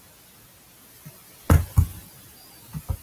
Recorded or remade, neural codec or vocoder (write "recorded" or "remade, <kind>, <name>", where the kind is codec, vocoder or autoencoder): recorded